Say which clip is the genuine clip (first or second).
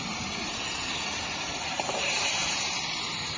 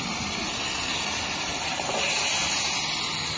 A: second